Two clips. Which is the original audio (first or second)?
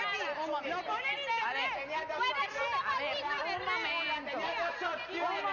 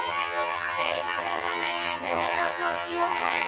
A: first